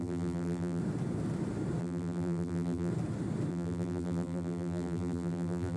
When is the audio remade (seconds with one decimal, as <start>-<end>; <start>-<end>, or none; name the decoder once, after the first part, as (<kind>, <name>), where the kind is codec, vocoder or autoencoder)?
0.0-0.8 (vocoder, BigVGAN v2); 1.8-2.9; 3.5-5.8